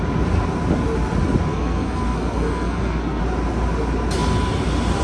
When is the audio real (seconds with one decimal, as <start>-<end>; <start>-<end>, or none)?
0.0-1.5; 3.2-5.0